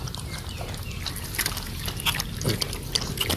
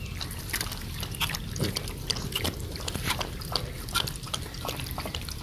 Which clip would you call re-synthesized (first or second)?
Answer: second